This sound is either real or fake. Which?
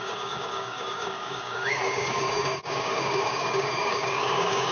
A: fake